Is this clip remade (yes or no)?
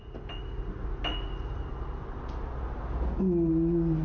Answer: no